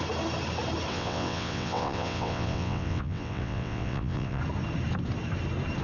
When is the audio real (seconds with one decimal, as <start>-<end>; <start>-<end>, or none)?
0.0-0.9; 4.4-5.8